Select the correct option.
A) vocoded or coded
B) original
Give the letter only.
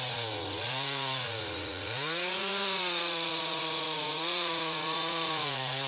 A